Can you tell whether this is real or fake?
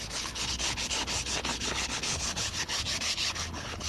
fake